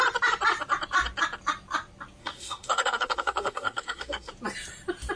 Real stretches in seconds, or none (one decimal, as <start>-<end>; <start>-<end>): 0.0-2.2; 4.3-5.2